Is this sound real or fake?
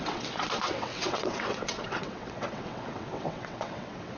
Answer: fake